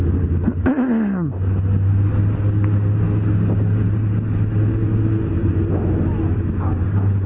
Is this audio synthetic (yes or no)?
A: no